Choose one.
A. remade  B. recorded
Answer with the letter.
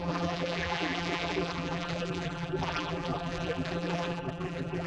A